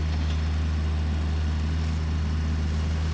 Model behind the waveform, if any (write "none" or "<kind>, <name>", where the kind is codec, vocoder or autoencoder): none